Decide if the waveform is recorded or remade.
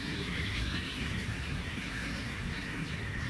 remade